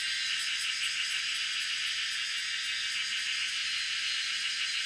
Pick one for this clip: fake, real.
real